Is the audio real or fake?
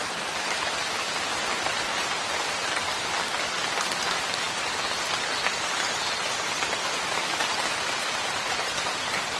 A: real